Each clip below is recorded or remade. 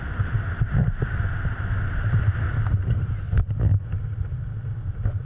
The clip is recorded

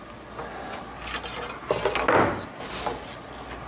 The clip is recorded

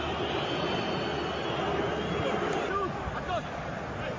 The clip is recorded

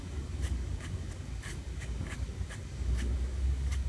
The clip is remade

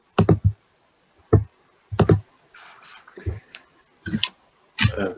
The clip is recorded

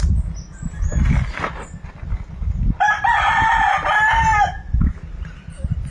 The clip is recorded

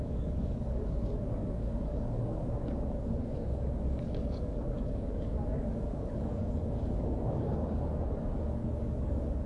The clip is remade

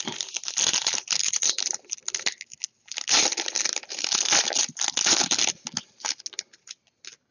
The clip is recorded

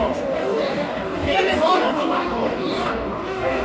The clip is remade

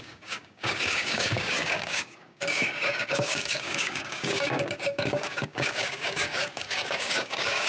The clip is remade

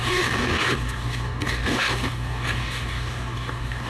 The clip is remade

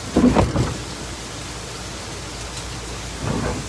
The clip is recorded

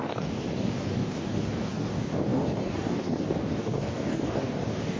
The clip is remade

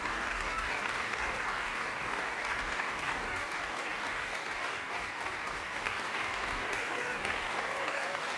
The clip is remade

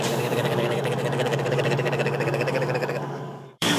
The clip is remade